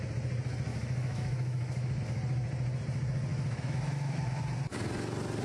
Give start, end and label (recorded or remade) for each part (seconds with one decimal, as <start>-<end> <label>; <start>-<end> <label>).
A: 0.0-0.7 recorded; 0.7-2.0 remade; 2.0-3.3 recorded; 3.3-4.4 remade; 4.4-5.4 recorded